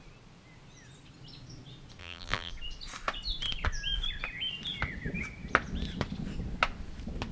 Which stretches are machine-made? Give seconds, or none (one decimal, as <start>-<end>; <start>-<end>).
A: 2.0-2.5